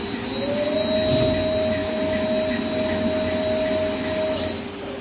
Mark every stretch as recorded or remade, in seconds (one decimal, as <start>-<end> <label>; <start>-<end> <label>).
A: 0.0-5.0 recorded